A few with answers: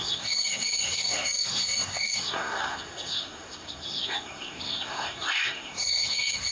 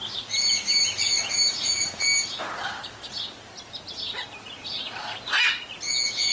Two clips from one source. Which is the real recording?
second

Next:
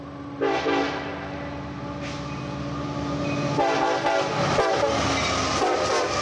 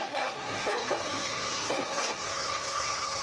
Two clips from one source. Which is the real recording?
first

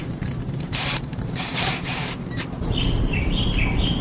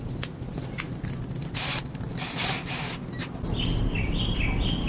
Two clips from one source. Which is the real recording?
second